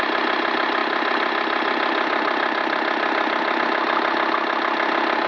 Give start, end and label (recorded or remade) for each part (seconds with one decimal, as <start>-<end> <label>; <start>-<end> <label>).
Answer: 0.0-0.8 recorded; 0.8-3.6 remade; 3.6-5.3 recorded